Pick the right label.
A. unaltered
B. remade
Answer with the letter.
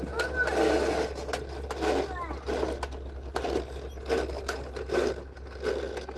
A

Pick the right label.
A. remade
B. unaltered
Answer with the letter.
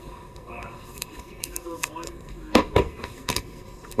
A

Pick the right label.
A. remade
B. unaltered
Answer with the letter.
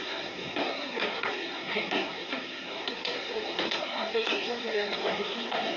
A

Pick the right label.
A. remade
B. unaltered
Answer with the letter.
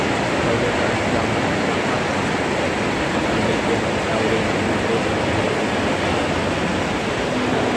B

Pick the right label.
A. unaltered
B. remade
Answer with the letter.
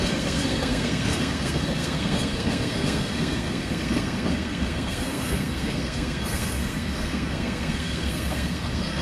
B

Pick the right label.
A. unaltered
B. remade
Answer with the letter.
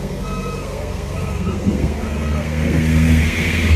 B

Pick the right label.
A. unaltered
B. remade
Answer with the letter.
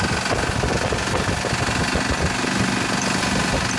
A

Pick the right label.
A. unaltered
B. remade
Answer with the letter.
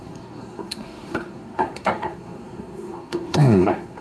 B